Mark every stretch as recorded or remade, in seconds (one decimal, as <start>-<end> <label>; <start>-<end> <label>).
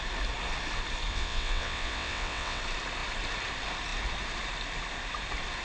0.0-1.1 recorded; 1.1-2.6 remade; 2.6-5.6 recorded